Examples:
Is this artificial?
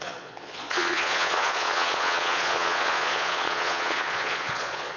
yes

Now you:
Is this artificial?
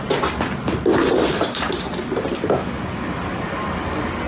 no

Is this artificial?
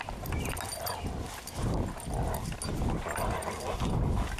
no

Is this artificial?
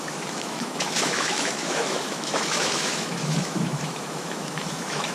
yes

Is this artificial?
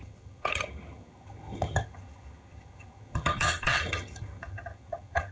yes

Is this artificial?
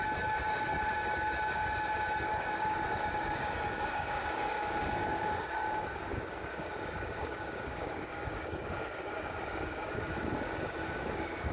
yes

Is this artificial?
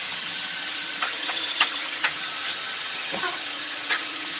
yes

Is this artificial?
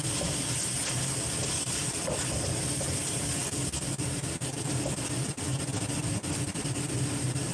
no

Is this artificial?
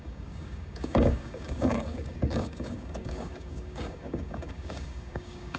yes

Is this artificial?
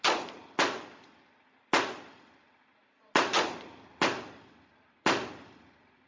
no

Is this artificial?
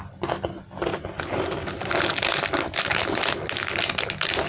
no